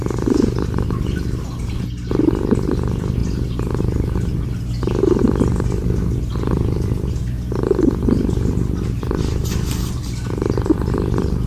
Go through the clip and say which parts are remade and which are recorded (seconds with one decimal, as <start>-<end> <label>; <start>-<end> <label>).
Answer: 0.0-11.5 recorded